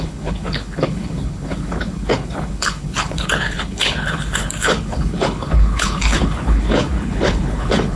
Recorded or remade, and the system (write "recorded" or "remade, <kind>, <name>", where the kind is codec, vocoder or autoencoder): remade, codec, HILCodec